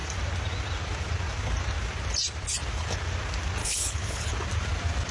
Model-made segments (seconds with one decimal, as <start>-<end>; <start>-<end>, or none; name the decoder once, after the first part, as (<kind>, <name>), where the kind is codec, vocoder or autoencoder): 3.6-4.3 (codec, HILCodec)